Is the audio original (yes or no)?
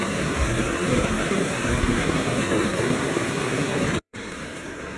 no